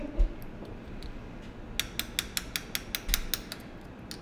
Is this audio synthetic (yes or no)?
no